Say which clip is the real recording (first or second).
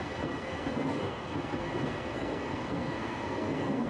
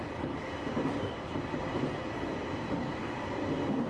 second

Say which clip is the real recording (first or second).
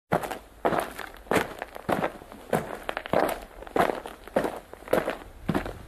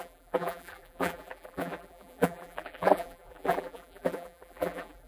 first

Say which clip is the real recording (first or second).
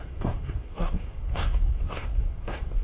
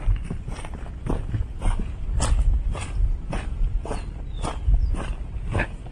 second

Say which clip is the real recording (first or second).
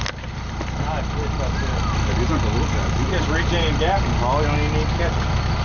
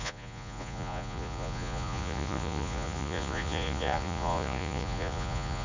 first